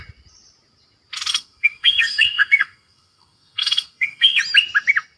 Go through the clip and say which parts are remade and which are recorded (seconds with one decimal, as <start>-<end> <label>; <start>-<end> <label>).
0.0-1.3 recorded; 1.3-4.4 remade; 4.4-5.2 recorded